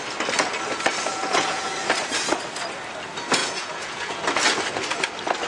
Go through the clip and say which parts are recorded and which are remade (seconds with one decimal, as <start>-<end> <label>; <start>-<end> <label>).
0.0-1.1 recorded; 1.1-1.7 remade; 1.7-3.4 recorded; 3.4-4.2 remade; 4.2-5.5 recorded